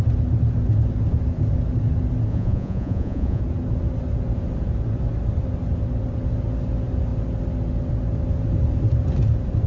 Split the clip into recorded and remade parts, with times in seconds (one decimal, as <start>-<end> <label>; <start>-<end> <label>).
0.0-2.3 recorded; 2.3-3.4 remade; 3.4-9.7 recorded